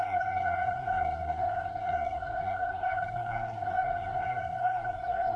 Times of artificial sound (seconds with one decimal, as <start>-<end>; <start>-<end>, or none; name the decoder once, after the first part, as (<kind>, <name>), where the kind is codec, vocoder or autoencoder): 0.0-5.4 (codec, SNAC)